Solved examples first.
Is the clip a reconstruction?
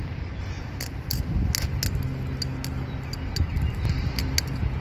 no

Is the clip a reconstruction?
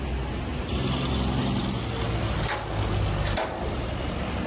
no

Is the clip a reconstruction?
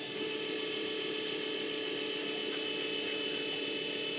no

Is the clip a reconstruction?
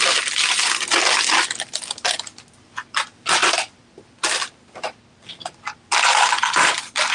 no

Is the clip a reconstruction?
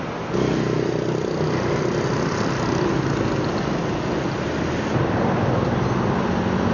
no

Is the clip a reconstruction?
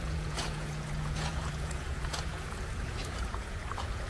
yes